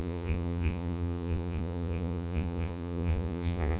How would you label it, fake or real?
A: fake